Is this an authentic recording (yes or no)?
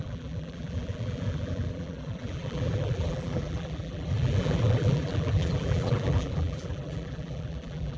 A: no